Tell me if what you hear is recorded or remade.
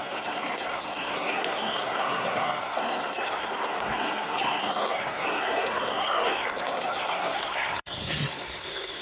remade